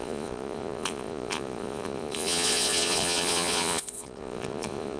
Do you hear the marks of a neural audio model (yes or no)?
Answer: yes